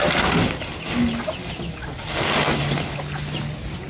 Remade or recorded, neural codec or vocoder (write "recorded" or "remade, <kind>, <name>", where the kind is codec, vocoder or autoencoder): recorded